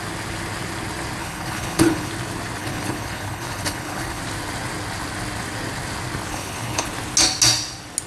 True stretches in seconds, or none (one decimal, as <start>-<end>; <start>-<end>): 0.0-1.2; 2.1-2.6; 4.2-6.3; 6.9-8.1